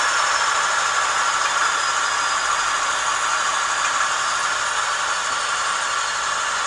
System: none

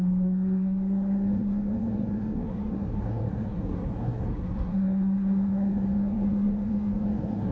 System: codec, SNAC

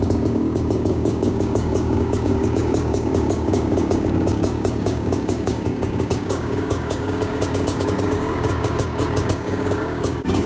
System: codec, DAC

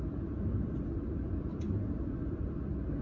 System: none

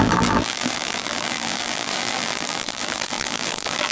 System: vocoder, BigVGAN v2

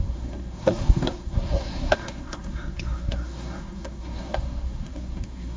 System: codec, SNAC